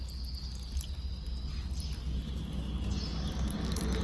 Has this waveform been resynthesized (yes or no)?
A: no